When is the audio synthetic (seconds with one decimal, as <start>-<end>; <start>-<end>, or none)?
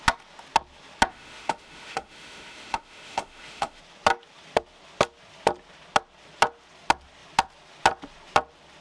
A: 1.1-3.8